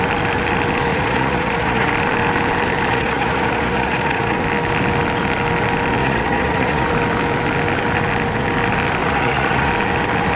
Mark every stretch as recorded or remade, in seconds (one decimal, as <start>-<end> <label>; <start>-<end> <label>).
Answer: 0.0-0.9 recorded; 0.9-1.9 remade; 1.9-2.9 recorded; 2.9-4.4 remade; 4.4-6.0 recorded; 6.0-6.9 remade; 6.9-9.0 recorded; 9.0-9.7 remade; 9.7-10.4 recorded